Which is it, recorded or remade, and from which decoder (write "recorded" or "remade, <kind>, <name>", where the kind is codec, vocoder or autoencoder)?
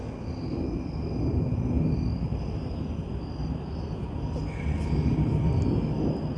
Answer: recorded